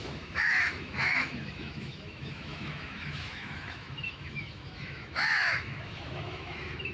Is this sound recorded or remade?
remade